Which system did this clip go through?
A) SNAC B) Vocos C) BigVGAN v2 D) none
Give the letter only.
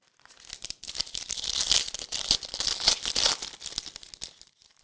D